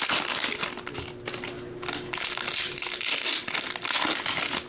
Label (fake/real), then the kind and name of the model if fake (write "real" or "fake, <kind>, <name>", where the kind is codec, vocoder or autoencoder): real